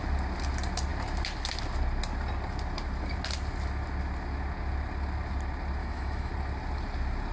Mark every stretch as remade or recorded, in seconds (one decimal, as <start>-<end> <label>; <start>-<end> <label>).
0.0-5.8 recorded; 5.8-6.3 remade; 6.3-7.3 recorded